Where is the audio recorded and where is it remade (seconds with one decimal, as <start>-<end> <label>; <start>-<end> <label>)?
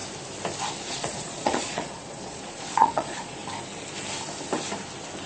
0.0-0.9 recorded; 0.9-3.4 remade; 3.4-5.3 recorded